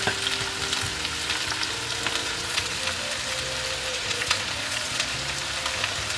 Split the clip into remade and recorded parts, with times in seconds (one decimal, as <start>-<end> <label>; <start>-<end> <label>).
0.0-2.2 recorded; 2.2-2.8 remade; 2.8-3.9 recorded; 3.9-5.2 remade; 5.2-6.2 recorded

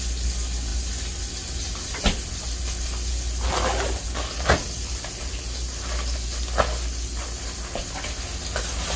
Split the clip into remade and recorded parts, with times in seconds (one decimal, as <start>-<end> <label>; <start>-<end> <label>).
0.0-9.0 recorded